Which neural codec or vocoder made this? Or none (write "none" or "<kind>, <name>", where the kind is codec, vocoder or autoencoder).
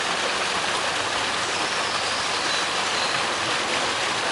vocoder, BigVGAN v2